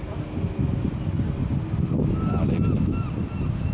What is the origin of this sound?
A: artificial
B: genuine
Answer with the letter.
B